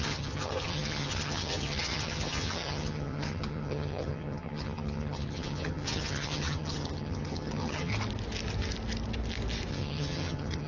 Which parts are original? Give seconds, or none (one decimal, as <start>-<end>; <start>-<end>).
7.9-9.7